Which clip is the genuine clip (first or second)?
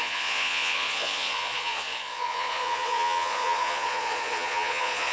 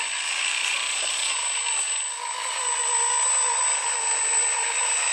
second